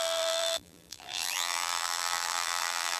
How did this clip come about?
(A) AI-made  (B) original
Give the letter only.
A